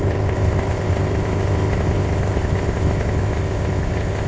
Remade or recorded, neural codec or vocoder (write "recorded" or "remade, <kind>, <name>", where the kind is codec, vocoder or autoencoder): remade, codec, ZipCodec